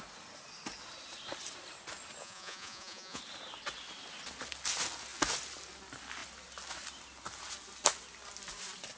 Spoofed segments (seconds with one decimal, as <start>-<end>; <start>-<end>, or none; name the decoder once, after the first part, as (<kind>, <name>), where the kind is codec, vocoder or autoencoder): 2.2-3.2 (vocoder, Vocos)